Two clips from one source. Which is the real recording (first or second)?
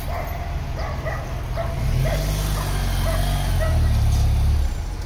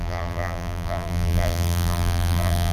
first